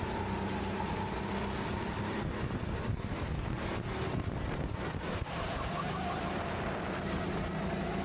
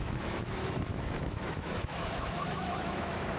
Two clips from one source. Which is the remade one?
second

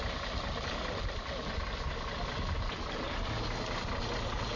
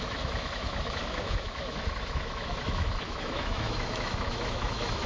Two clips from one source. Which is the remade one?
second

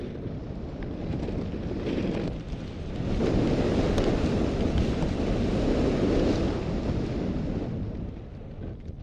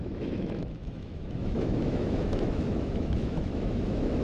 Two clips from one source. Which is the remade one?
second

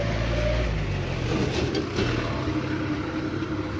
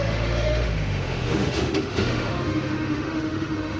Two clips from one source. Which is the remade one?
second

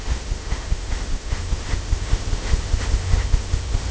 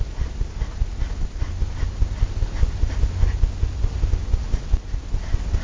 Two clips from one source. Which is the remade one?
first